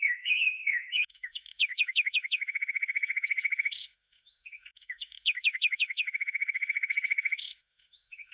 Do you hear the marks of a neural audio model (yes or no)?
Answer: yes